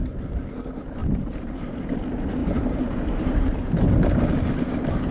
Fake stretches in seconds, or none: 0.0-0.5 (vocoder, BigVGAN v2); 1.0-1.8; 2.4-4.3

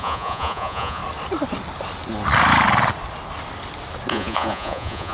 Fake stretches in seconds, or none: 0.0-1.0 (vocoder, Vocos); 4.1-5.1

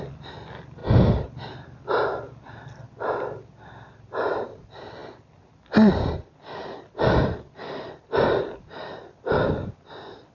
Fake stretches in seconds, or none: none

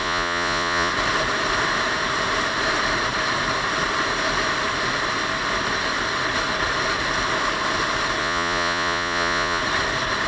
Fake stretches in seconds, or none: 0.0-0.9 (vocoder, Vocos); 8.2-9.6

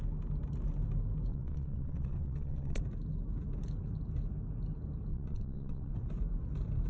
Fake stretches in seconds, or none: 1.3-2.8 (vocoder, WaveNeXt); 5.1-5.9

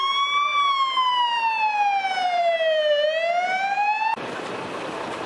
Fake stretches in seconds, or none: none